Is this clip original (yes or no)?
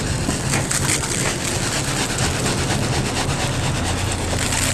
yes